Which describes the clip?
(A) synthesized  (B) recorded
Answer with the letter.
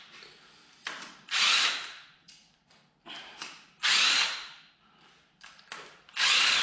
B